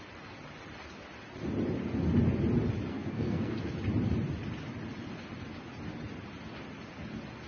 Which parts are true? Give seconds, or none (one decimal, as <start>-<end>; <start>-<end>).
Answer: 0.0-2.9; 3.7-7.5